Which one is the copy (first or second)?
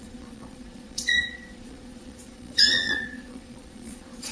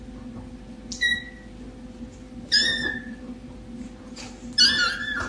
first